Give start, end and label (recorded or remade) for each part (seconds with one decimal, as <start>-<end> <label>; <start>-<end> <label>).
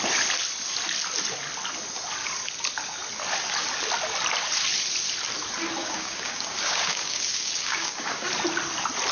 0.0-5.8 recorded; 5.8-8.2 remade; 8.2-9.1 recorded